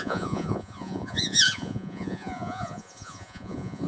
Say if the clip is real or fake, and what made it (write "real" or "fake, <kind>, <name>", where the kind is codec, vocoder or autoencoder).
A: fake, vocoder, Vocos